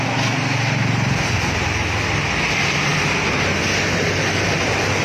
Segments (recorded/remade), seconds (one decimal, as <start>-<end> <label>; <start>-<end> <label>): 0.0-5.0 recorded